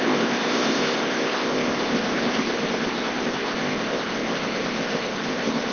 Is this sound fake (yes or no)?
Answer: yes